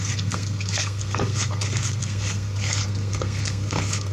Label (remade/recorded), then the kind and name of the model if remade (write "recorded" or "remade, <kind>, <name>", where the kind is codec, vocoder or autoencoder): remade, codec, SNAC